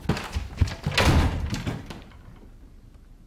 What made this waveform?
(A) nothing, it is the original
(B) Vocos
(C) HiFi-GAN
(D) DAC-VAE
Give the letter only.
A